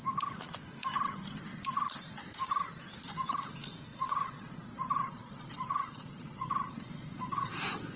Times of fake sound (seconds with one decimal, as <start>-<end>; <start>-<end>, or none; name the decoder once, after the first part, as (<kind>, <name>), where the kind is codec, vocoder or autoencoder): 1.5-2.0 (vocoder, Vocos); 3.9-7.5